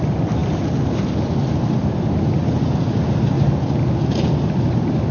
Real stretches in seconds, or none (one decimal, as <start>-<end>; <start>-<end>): 0.0-5.1